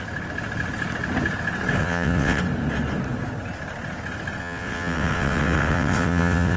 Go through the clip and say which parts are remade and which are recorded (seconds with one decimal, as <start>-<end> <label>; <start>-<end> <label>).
0.0-1.8 recorded; 1.8-2.4 remade; 2.4-4.4 recorded; 4.4-6.6 remade